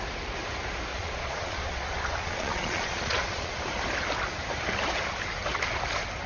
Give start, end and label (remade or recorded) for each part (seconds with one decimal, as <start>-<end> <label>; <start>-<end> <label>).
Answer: 0.0-0.9 recorded; 0.9-3.6 remade; 3.6-6.3 recorded